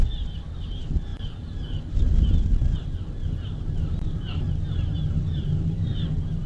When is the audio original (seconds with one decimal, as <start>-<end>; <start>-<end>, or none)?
0.0-6.5